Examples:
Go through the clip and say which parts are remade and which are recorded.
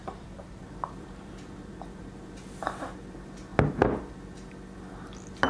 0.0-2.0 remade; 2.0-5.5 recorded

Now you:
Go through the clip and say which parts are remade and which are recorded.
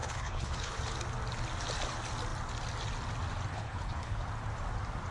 0.0-0.8 remade; 0.8-3.5 recorded; 3.5-4.2 remade; 4.2-5.1 recorded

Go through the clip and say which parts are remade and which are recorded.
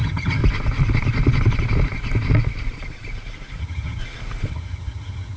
0.0-0.4 remade; 0.4-3.6 recorded; 3.6-4.0 remade; 4.0-4.5 recorded; 4.5-5.4 remade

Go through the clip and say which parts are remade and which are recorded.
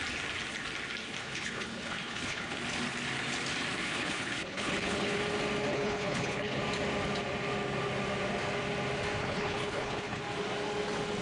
0.0-1.2 recorded; 1.2-2.6 remade; 2.6-3.8 recorded; 3.8-5.2 remade; 5.2-5.7 recorded; 5.7-6.6 remade; 6.6-9.2 recorded; 9.2-10.2 remade; 10.2-11.2 recorded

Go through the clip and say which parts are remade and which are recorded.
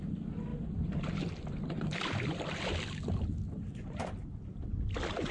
0.0-0.5 recorded; 0.5-3.2 remade; 3.2-5.3 recorded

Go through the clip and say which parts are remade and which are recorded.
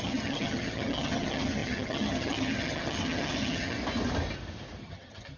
0.0-3.8 remade; 3.8-4.8 recorded; 4.8-5.4 remade